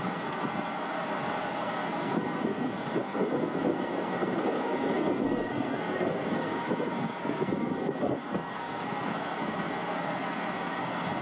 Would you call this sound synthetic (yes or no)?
yes